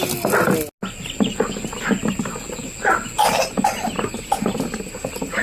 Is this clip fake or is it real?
real